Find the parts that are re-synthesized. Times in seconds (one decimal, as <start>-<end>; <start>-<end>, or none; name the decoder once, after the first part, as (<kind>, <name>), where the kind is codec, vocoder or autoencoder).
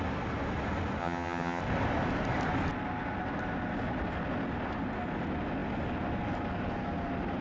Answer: 1.0-1.6 (vocoder, HiFi-GAN)